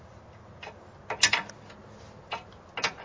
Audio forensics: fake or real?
real